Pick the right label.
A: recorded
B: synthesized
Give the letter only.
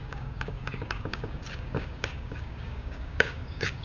B